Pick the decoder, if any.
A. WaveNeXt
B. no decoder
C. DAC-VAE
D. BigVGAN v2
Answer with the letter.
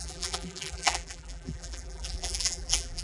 D